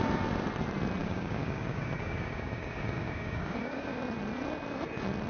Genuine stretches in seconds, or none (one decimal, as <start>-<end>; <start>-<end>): 0.0-1.0; 4.0-5.3